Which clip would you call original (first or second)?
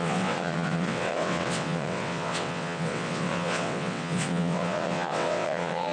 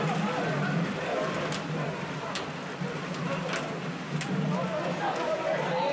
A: second